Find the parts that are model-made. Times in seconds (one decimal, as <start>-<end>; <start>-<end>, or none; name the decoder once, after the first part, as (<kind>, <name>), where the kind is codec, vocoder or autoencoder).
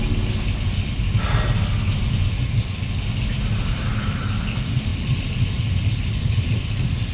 none